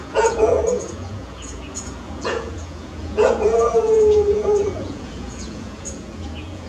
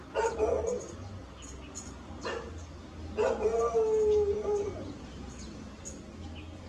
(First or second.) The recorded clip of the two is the second